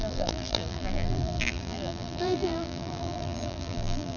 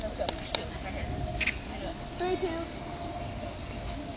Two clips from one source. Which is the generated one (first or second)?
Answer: first